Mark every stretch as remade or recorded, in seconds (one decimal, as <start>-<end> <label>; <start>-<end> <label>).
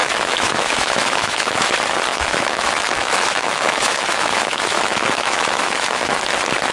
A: 0.0-1.7 remade; 1.7-2.1 recorded; 2.1-6.1 remade; 6.1-6.7 recorded